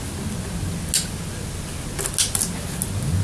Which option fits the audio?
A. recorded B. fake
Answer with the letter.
A